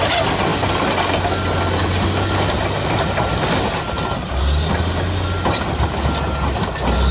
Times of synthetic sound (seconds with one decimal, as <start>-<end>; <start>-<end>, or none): none